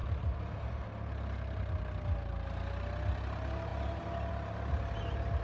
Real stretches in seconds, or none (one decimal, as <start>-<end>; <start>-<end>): 0.0-5.4